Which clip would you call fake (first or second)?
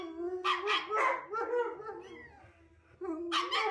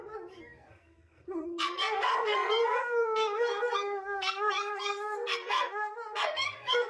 second